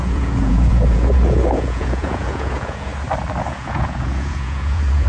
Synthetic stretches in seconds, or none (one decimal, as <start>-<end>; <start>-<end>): 0.0-2.9; 3.4-5.1